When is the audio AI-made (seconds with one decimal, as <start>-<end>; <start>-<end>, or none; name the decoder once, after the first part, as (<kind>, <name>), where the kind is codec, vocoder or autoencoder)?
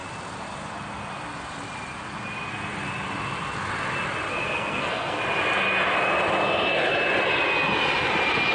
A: 4.3-5.2 (codec, SNAC)